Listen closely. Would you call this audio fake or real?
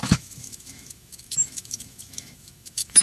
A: fake